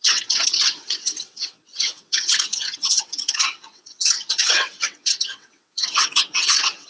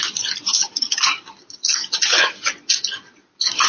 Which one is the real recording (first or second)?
second